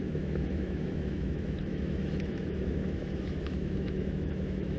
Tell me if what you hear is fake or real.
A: fake